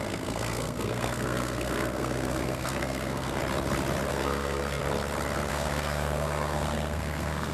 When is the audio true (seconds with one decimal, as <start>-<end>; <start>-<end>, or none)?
3.4-4.1; 4.8-5.5